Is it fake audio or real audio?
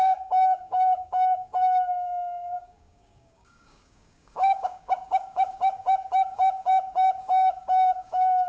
fake